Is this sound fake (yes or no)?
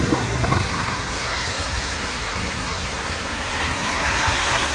yes